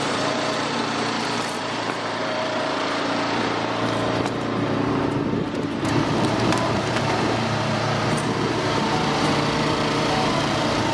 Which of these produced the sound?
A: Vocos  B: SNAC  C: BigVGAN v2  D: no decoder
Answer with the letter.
C